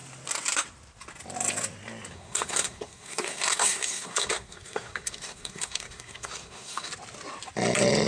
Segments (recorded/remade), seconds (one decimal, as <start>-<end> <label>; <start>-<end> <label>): 0.0-2.1 recorded; 2.1-6.9 remade; 6.9-8.1 recorded

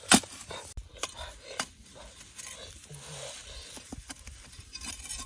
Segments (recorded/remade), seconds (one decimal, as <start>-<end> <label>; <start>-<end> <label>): 0.0-5.3 recorded

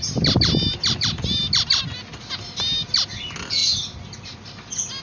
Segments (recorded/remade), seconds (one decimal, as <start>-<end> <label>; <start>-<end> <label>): 0.0-5.0 recorded